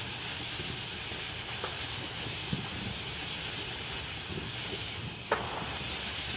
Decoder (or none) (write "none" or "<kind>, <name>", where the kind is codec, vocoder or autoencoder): none